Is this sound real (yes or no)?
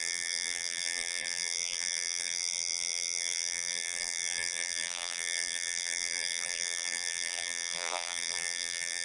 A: no